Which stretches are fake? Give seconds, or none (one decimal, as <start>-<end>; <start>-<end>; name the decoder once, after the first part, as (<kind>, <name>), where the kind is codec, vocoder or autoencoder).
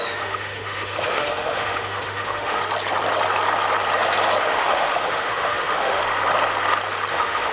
0.0-2.6 (autoencoder, DAC-VAE); 4.4-6.0; 7.1-7.5